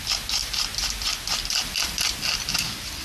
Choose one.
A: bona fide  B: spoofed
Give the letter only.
A